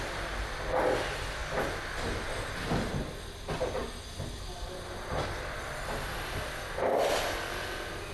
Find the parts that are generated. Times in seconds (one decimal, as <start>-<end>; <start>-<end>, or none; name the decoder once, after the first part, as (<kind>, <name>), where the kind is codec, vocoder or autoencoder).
none